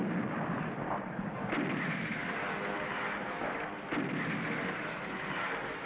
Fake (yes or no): no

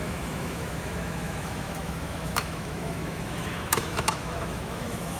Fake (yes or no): yes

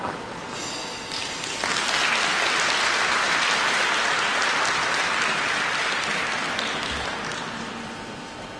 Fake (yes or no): no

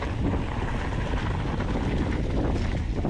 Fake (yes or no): no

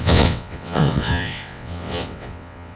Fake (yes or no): yes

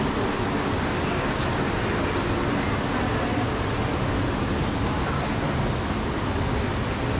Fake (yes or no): no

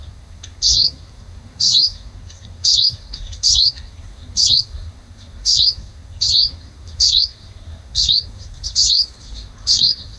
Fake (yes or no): yes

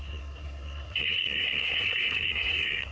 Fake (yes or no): yes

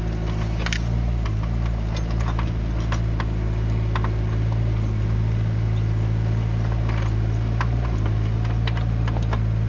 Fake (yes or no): no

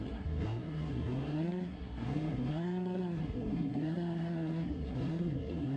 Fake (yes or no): yes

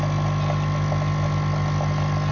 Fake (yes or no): no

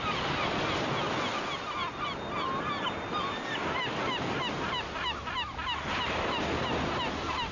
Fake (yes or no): no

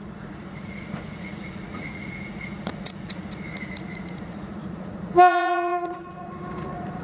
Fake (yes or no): yes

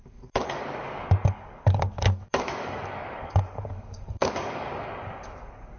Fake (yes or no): yes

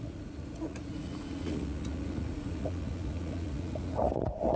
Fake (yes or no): yes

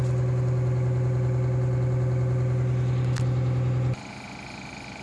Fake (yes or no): no